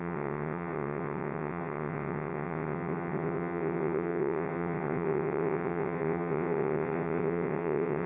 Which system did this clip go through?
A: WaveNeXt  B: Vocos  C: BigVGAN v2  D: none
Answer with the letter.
A